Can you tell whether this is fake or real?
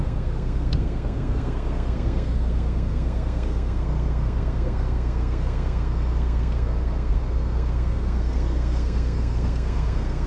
fake